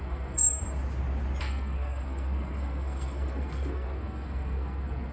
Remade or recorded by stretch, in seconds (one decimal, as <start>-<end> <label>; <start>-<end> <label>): 0.0-0.6 remade; 0.6-1.4 recorded; 1.4-5.1 remade